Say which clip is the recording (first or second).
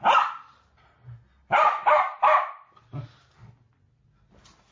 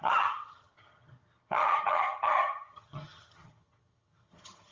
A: first